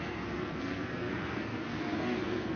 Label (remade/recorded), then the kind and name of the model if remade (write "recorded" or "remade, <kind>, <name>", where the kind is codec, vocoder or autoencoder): remade, codec, SNAC